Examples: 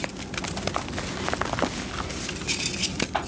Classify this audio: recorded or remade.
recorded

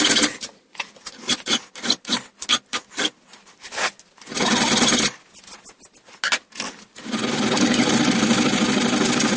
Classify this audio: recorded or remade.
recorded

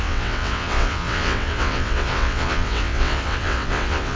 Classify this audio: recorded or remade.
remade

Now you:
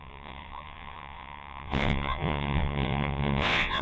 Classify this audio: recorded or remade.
remade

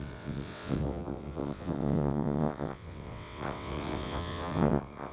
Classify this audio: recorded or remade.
remade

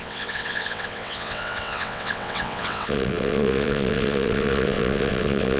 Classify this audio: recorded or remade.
remade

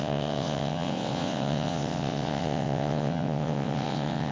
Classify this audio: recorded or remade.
remade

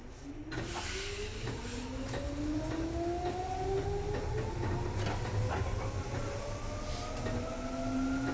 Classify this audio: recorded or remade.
recorded